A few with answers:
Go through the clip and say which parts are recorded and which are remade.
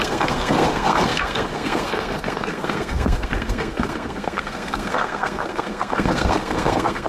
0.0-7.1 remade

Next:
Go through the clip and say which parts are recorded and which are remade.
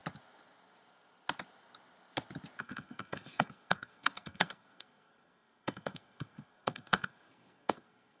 0.0-2.6 recorded; 2.6-8.2 remade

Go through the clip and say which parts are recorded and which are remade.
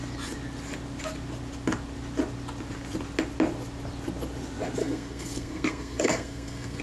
0.0-4.8 recorded; 4.8-6.8 remade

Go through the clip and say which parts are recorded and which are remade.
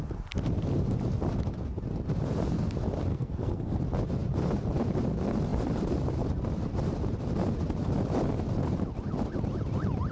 0.0-3.1 recorded; 3.1-3.8 remade; 3.8-10.1 recorded